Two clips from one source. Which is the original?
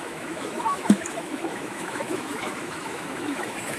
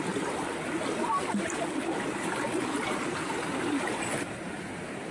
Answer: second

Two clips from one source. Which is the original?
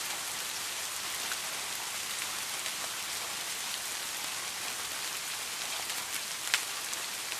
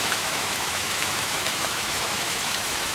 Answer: first